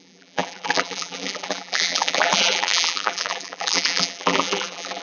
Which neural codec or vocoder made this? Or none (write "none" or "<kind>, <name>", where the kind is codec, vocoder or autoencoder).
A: vocoder, BigVGAN v2